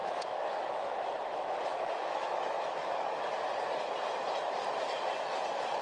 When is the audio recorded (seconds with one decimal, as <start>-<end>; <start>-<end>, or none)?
3.3-5.8